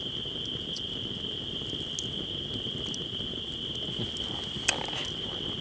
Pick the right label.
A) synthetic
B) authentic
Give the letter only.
B